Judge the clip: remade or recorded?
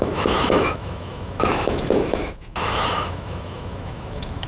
remade